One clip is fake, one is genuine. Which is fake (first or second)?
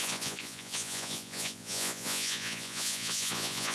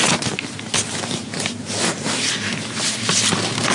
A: first